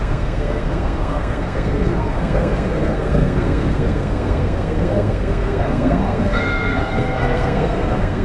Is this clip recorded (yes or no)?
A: no